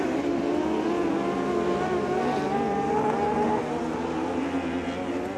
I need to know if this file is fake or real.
real